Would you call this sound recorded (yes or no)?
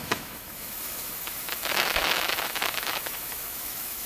no